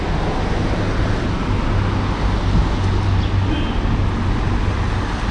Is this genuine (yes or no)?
yes